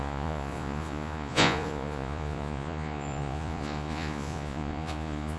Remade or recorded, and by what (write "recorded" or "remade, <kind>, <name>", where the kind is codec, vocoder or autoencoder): remade, vocoder, Vocos